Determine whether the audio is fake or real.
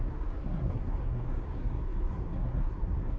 fake